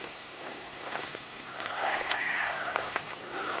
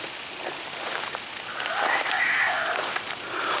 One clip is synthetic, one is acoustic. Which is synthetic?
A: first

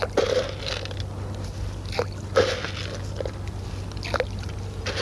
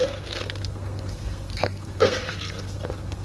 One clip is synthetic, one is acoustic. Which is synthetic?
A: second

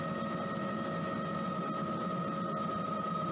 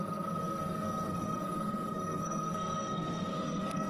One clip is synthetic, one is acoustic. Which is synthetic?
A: second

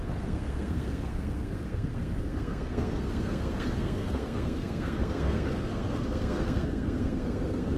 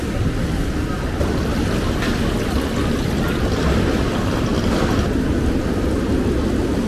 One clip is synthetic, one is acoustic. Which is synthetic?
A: first